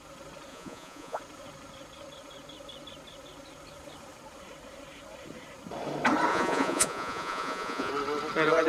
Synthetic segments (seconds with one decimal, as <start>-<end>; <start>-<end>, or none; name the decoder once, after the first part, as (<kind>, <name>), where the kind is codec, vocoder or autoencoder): 0.5-1.2 (vocoder, Vocos); 6.3-7.9